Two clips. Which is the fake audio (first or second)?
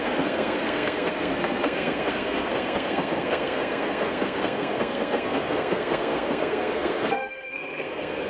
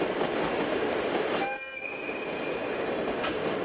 first